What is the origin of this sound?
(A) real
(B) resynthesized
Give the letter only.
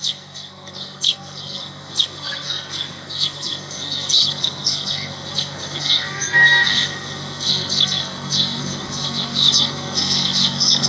B